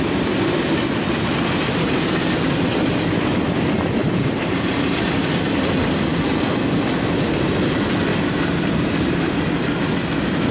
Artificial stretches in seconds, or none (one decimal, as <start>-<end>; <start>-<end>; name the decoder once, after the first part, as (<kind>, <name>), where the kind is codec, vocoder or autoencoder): 4.0-5.2 (vocoder, BigVGAN v2); 8.1-8.7